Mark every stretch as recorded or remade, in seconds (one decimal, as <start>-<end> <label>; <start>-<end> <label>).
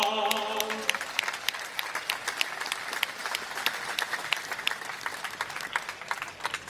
0.0-6.7 recorded